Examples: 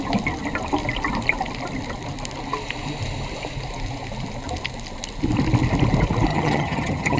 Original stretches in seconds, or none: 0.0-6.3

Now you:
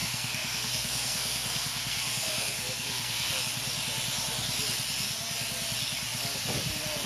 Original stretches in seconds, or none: 3.4-7.1

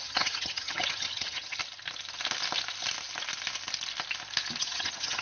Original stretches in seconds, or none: 1.6-4.6

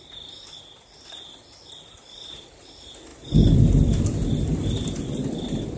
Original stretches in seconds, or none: 0.0-5.8

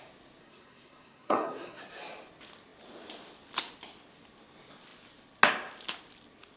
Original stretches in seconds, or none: 0.0-0.4; 1.8-6.6

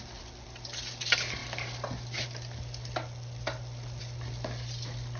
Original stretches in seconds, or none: 0.0-5.2